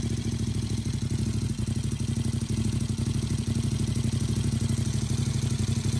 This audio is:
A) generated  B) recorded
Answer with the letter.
B